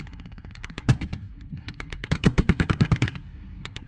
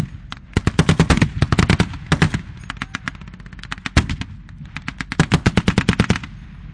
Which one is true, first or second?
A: second